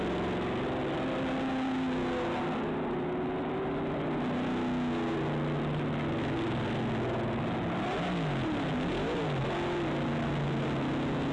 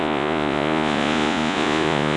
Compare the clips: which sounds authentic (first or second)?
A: first